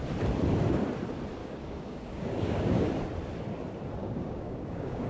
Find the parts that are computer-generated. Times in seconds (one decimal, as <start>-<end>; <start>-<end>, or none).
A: 1.4-2.9; 4.0-5.1

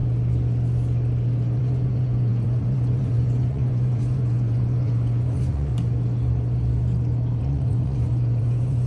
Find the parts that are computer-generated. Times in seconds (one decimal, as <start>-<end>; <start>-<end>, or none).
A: 1.6-5.7; 7.4-8.9

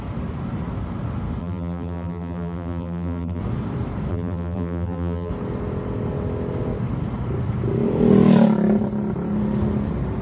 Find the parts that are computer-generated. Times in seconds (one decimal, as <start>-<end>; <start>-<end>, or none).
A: 1.4-3.4; 4.1-5.3

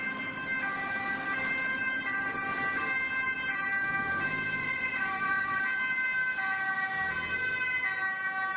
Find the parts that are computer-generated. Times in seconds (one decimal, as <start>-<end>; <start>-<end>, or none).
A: 4.6-5.6

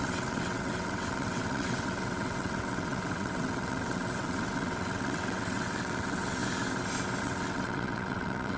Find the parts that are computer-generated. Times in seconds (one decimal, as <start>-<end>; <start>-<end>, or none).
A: 0.0-6.4; 7.2-8.6

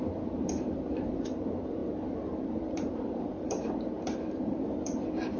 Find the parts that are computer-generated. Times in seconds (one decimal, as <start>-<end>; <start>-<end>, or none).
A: 0.0-5.4